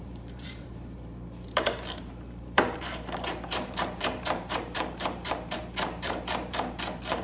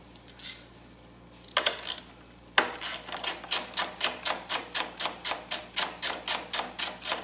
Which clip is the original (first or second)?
second